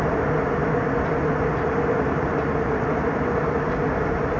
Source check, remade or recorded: recorded